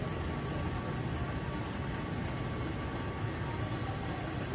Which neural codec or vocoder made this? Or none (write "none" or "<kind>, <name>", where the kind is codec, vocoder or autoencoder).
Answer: none